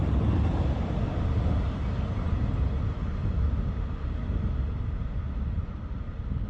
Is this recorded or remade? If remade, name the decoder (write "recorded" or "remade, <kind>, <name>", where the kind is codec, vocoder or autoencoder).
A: recorded